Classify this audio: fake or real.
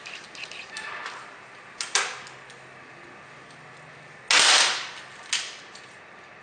real